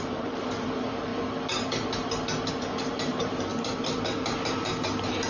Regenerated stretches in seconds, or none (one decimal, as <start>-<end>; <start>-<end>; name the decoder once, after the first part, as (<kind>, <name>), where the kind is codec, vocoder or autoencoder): 0.0-1.1 (vocoder, BigVGAN v2); 2.5-3.5

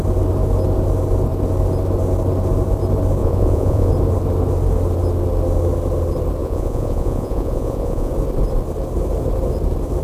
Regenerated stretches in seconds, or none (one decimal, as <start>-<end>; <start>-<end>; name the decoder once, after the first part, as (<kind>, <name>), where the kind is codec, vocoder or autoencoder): 3.2-3.9 (vocoder, Vocos); 6.4-8.1

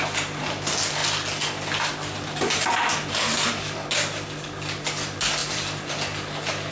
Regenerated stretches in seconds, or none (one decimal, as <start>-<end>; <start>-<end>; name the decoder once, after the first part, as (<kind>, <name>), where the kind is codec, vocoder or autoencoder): 5.4-5.9 (vocoder, BigVGAN v2)

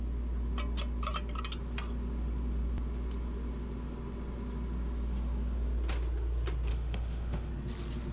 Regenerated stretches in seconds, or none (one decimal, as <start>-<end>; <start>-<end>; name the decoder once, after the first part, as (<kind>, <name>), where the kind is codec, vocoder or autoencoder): 6.7-7.5 (autoencoder, DAC-VAE)